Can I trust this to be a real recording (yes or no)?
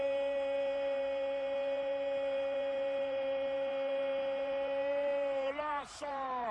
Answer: no